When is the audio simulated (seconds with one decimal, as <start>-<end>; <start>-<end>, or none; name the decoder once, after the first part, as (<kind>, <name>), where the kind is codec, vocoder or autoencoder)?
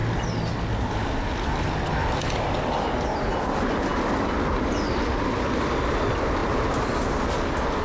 none